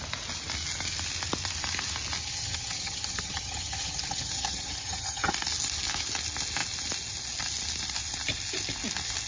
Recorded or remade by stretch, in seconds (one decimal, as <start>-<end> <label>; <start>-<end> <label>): 0.0-2.2 recorded; 2.2-5.3 remade; 5.3-9.3 recorded